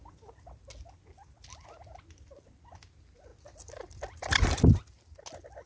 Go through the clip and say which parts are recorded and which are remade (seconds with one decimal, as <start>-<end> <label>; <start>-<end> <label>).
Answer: 0.0-5.7 recorded